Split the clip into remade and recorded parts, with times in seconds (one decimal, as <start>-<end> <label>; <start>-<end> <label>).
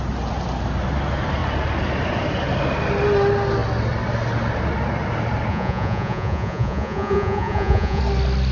0.0-5.5 recorded; 5.5-8.0 remade; 8.0-8.5 recorded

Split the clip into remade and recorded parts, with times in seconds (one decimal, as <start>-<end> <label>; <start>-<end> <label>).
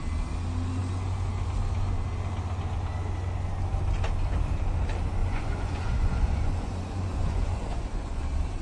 0.0-5.2 recorded; 5.2-8.2 remade; 8.2-8.6 recorded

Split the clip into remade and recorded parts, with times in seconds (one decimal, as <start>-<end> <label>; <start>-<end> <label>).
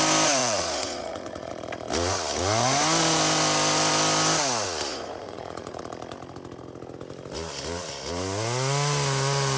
0.0-0.4 recorded; 0.4-1.5 remade; 1.5-4.9 recorded; 4.9-5.8 remade; 5.8-9.6 recorded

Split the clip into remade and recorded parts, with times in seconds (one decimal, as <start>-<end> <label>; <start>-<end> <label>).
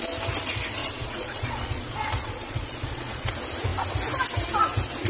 0.0-0.8 recorded; 0.8-3.3 remade; 3.3-5.1 recorded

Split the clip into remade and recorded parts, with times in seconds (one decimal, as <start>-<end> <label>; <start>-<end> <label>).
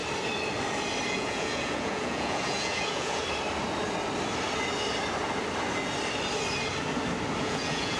0.0-1.1 recorded; 1.1-3.2 remade; 3.2-7.4 recorded; 7.4-8.0 remade